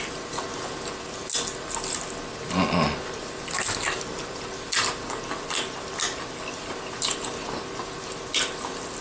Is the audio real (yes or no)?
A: yes